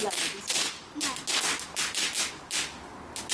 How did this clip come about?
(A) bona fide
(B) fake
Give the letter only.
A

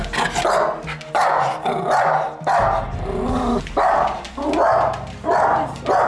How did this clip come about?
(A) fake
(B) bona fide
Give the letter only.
B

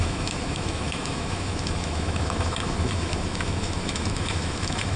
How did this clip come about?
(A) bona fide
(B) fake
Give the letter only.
B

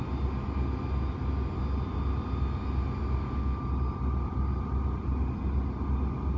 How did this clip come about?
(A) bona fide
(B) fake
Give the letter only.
A